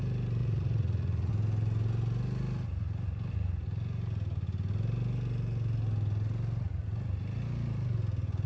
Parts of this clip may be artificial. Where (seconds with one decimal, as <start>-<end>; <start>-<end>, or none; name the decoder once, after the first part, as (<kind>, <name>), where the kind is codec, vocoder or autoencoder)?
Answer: 0.4-1.3 (vocoder, Vocos)